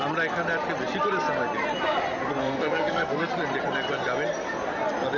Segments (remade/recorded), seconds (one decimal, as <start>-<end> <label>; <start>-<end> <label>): 0.0-2.4 recorded; 2.4-3.3 remade; 3.3-5.2 recorded